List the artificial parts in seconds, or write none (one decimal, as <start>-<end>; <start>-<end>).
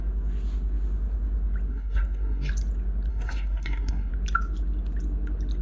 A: 1.7-2.5; 3.1-4.1